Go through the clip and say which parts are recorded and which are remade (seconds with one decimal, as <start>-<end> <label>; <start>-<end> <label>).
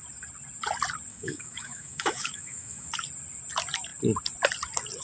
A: 0.0-1.1 recorded; 1.1-2.9 remade; 2.9-5.0 recorded